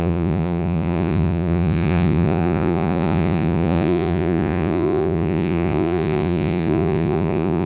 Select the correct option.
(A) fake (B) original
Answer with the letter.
A